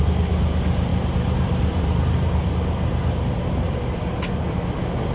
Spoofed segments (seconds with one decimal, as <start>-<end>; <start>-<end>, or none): 0.9-4.0